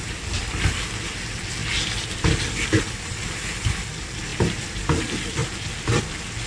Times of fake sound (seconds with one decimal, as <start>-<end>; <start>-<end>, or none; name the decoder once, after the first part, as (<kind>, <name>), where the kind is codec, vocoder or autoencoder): none